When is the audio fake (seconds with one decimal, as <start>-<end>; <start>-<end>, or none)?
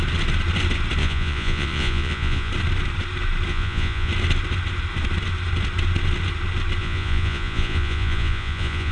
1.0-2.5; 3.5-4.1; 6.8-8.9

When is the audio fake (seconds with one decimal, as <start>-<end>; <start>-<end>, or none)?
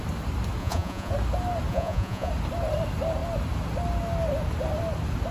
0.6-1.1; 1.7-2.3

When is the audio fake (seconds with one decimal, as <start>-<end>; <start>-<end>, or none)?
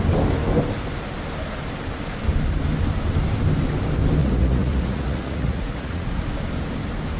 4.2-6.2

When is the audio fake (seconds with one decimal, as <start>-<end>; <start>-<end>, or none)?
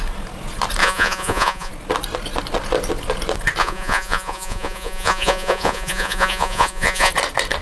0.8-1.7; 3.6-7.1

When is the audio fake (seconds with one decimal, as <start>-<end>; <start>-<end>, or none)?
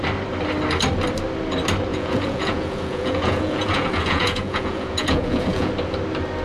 1.9-5.7